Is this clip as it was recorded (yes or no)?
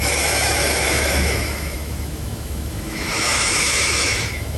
no